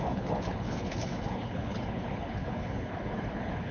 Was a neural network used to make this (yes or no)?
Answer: yes